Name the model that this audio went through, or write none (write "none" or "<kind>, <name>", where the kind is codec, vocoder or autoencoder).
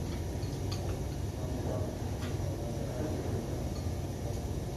none